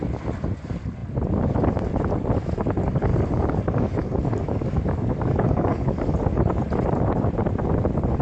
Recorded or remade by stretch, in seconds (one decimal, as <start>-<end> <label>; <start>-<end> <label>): 0.0-3.1 recorded; 3.1-6.6 remade; 6.6-8.2 recorded